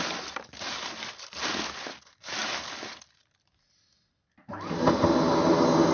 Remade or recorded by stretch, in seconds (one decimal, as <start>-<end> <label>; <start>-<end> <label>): 0.0-5.9 recorded